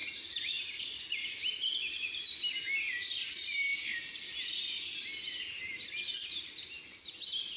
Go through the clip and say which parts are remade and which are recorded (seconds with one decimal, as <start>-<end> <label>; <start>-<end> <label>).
0.0-1.2 remade; 1.2-7.6 recorded